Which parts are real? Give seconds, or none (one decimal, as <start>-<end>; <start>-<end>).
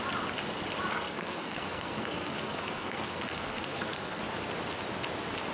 0.0-0.9; 4.2-5.5